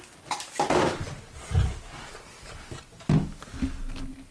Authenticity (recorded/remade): recorded